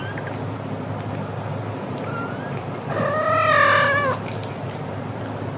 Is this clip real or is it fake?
real